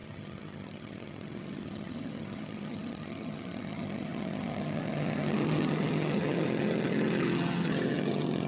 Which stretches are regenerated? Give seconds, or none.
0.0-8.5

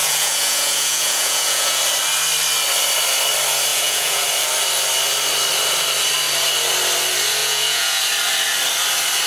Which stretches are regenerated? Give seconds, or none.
0.0-1.8; 3.7-4.2; 7.4-8.0

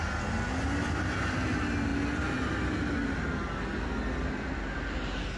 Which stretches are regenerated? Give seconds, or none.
none

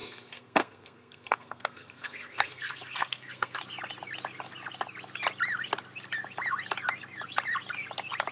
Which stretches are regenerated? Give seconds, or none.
0.0-3.6

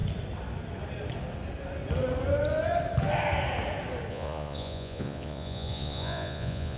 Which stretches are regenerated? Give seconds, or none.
4.1-6.8

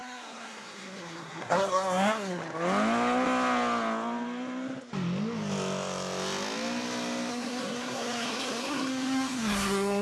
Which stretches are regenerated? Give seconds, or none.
0.0-2.4; 7.3-10.0

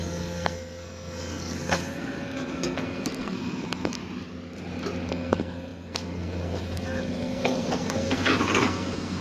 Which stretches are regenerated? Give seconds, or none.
0.0-4.0; 5.1-9.2